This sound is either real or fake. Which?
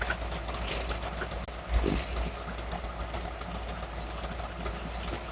real